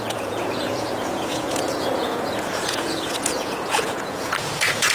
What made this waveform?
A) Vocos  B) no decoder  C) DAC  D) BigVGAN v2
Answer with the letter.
A